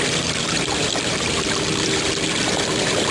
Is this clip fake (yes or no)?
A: yes